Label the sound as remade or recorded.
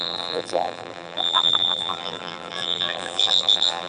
remade